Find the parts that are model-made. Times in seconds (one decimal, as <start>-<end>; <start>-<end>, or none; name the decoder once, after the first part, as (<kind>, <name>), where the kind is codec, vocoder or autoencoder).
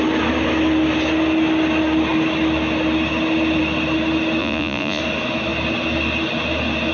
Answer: 4.4-5.0 (vocoder, Vocos)